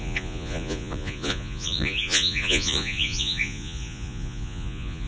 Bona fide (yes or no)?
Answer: no